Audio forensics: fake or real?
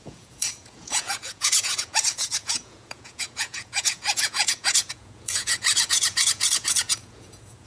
fake